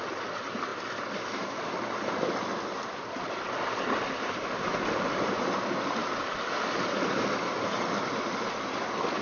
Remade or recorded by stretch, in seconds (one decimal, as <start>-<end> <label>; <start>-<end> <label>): 0.0-9.2 recorded